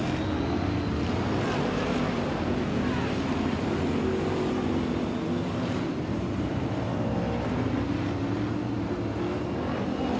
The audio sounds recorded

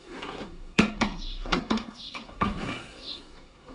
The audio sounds remade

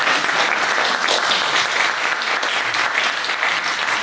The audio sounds recorded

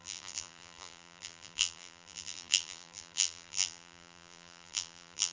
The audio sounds remade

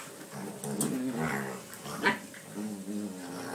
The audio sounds recorded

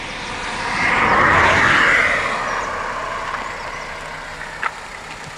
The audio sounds recorded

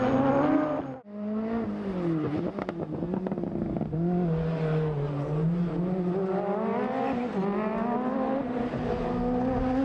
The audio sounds recorded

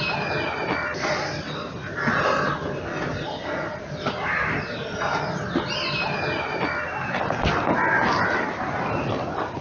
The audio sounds recorded